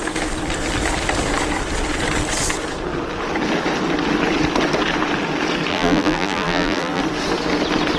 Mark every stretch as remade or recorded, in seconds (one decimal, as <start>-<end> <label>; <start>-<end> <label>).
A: 0.0-5.7 recorded; 5.7-7.0 remade; 7.0-8.0 recorded